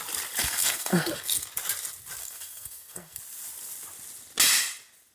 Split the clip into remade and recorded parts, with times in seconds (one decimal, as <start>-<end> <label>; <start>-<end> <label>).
0.0-0.4 recorded; 0.4-1.5 remade; 1.5-2.2 recorded; 2.2-3.2 remade; 3.2-5.1 recorded